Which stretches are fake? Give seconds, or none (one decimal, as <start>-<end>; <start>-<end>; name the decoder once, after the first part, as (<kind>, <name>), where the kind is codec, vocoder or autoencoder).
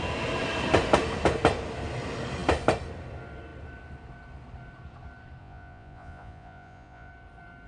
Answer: 5.4-7.1 (vocoder, Vocos)